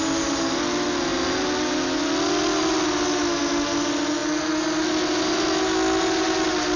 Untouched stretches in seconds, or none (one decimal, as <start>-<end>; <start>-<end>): 0.0-6.8